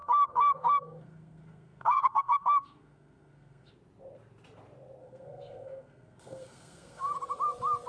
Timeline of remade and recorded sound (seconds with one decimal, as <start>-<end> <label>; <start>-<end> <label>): 0.0-3.7 remade; 3.7-5.0 recorded; 5.0-7.1 remade; 7.1-7.9 recorded